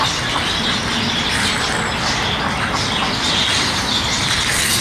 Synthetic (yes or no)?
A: no